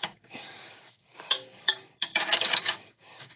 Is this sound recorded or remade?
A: remade